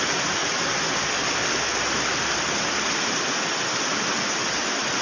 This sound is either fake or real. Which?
real